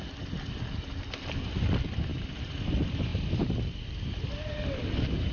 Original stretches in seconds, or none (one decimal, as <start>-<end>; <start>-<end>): 0.0-2.1; 2.7-3.1; 4.8-5.3